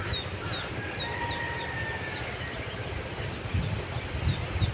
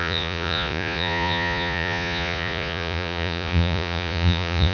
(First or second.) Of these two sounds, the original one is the first